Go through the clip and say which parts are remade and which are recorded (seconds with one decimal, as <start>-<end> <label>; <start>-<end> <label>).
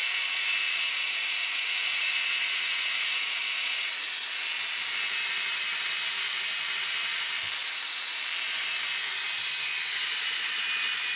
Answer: 0.0-4.3 remade; 4.3-7.6 recorded; 7.6-8.2 remade; 8.2-11.2 recorded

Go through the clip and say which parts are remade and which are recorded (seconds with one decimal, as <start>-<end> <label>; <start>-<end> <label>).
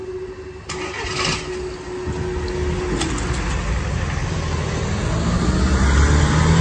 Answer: 0.0-6.6 recorded